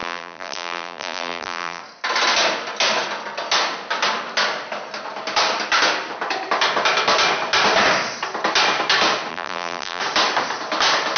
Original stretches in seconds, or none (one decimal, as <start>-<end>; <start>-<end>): 1.8-9.3; 10.0-11.2